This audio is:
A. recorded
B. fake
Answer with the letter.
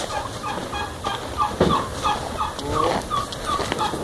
A